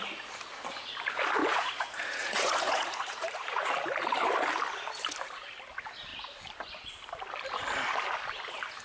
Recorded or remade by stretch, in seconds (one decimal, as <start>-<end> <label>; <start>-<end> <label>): 0.0-1.4 recorded; 1.4-3.7 remade; 3.7-8.8 recorded